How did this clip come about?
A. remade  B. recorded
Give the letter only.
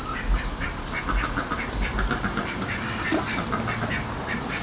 B